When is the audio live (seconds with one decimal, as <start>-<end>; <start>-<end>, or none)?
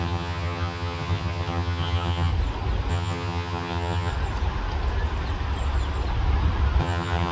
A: 2.3-2.9; 4.1-6.8